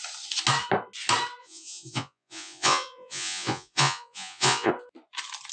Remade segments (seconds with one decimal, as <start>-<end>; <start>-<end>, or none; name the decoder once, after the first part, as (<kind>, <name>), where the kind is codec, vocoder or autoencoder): 1.4-4.7 (vocoder, Vocos)